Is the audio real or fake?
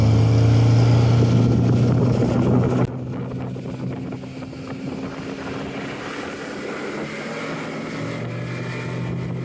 real